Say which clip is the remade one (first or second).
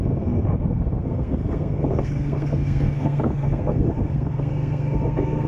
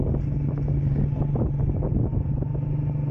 first